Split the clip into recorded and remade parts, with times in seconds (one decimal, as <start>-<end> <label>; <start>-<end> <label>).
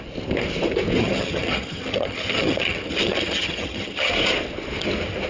0.0-1.0 recorded; 1.0-4.1 remade; 4.1-5.3 recorded